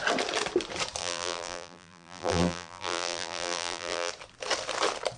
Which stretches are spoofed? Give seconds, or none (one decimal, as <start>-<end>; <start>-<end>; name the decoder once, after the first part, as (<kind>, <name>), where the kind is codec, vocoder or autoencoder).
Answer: 1.0-4.1 (vocoder, BigVGAN v2)